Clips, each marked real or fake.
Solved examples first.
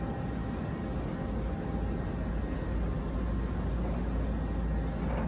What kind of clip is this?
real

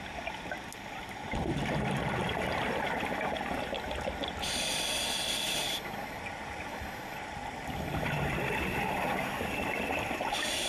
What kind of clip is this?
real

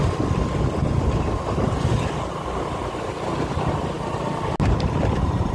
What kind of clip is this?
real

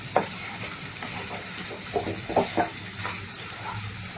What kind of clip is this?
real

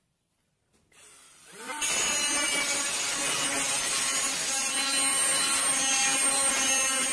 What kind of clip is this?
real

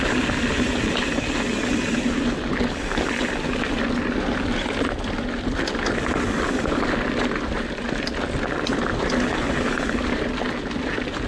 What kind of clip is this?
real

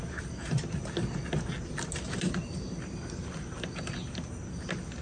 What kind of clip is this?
real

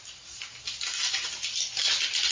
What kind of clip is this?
real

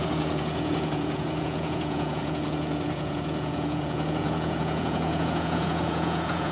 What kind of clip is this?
fake